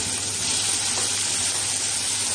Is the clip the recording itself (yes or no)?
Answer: yes